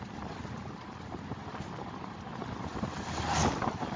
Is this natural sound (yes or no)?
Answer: yes